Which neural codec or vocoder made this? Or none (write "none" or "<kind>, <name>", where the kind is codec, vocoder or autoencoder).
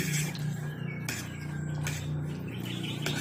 none